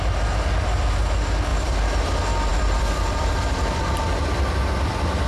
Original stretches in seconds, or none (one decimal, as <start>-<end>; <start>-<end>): 0.0-1.5; 2.0-2.5